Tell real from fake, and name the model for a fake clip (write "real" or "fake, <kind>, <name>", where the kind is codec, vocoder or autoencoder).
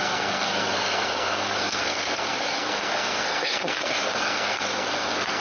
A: fake, codec, SNAC